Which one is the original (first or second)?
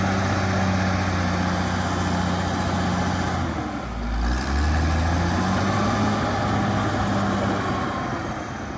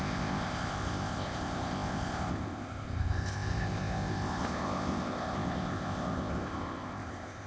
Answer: first